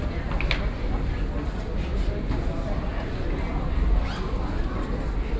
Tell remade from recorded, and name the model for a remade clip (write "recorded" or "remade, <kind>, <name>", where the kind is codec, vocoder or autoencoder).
recorded